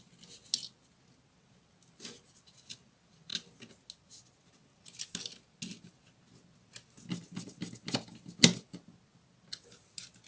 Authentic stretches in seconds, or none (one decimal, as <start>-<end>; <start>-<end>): 0.0-10.3